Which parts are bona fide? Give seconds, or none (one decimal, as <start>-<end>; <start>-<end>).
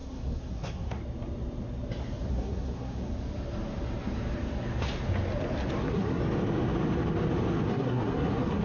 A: 1.0-2.3; 3.1-5.8; 6.2-7.7